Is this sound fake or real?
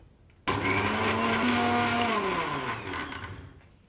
real